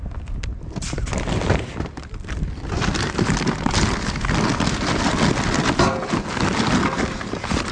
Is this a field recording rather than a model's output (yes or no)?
yes